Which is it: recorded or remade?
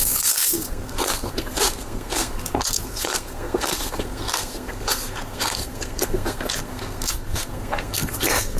remade